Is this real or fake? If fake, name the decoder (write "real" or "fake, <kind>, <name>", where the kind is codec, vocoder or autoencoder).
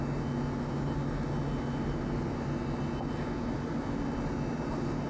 real